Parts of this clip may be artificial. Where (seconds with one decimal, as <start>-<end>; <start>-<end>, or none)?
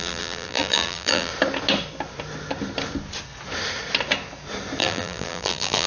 0.0-1.3; 4.8-5.9